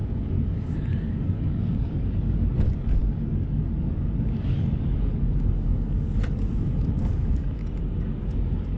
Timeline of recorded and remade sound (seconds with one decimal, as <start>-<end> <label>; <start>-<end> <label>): 0.0-7.6 remade; 7.6-8.2 recorded; 8.2-8.8 remade